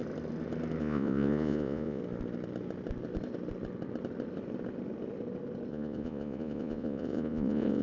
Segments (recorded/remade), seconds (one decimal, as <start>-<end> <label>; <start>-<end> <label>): 0.0-0.8 recorded; 0.8-2.0 remade; 2.0-5.7 recorded; 5.7-7.8 remade